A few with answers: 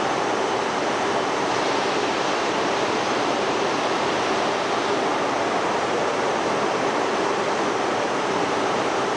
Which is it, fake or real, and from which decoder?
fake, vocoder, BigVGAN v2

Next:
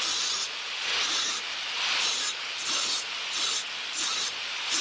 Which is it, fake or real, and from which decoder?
real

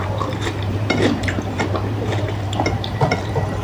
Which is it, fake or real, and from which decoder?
fake, vocoder, BigVGAN v2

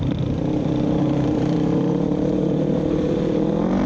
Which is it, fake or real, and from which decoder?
fake, vocoder, BigVGAN v2